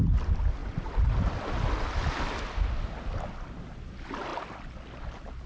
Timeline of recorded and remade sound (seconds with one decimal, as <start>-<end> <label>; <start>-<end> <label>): 0.0-0.6 recorded; 0.6-2.9 remade; 2.9-5.5 recorded